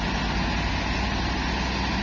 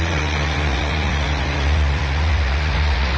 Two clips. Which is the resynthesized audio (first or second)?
second